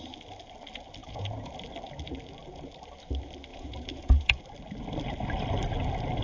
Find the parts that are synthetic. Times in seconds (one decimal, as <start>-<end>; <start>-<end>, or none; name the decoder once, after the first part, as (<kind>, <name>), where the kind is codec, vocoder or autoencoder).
1.0-1.5 (vocoder, Vocos); 3.5-4.4